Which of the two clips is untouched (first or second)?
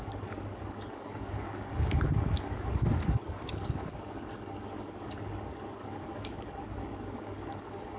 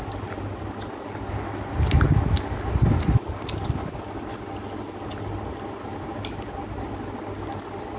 second